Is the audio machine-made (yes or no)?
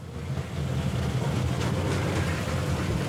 no